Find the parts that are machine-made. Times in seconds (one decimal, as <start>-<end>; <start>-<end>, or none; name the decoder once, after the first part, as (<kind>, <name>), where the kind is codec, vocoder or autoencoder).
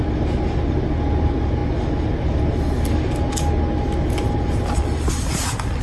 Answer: none